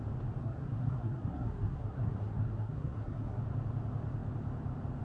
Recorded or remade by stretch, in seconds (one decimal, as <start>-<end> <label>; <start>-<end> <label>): 0.0-0.4 recorded; 0.4-3.4 remade; 3.4-5.0 recorded